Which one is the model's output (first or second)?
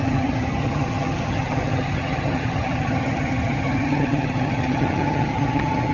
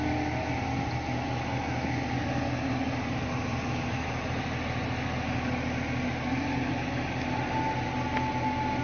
first